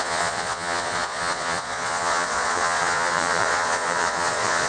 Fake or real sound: fake